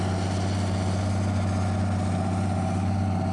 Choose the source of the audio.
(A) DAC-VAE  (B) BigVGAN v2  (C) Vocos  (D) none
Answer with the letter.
D